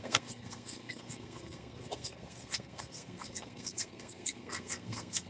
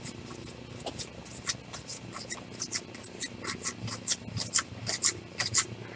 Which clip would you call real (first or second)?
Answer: second